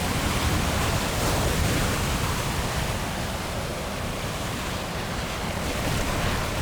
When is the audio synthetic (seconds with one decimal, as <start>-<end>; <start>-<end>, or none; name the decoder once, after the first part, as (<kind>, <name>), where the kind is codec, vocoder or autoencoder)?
3.7-5.6 (vocoder, BigVGAN v2)